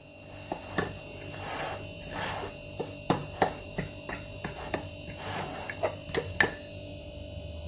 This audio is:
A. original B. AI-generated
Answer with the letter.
A